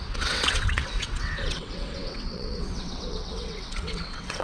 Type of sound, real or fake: fake